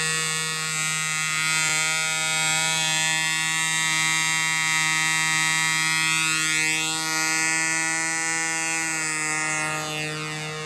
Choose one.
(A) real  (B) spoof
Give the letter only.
A